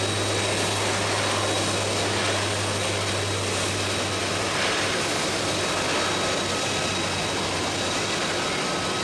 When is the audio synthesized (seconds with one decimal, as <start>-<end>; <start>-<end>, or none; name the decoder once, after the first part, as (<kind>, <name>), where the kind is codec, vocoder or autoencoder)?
4.2-5.4 (vocoder, BigVGAN v2)